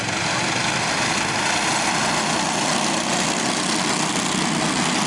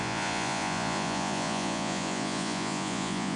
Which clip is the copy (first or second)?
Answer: second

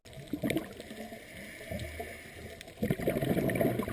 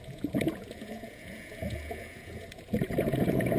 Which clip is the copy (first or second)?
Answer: second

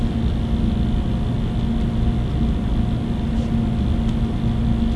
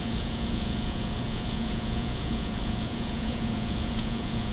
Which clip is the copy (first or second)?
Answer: second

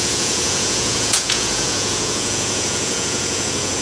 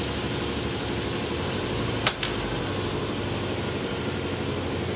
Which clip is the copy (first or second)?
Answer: first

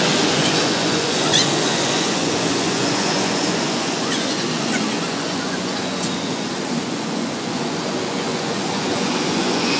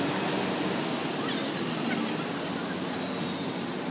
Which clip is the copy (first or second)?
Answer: first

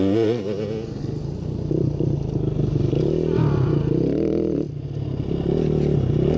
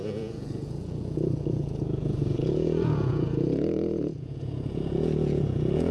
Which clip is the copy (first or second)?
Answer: second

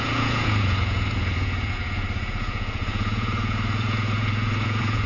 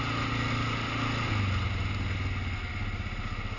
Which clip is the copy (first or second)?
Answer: first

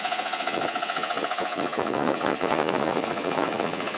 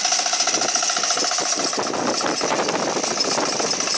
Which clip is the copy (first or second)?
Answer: first